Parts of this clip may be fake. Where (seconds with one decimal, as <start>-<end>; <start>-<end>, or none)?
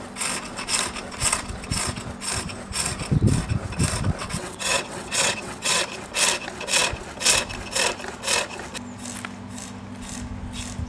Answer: 4.2-5.8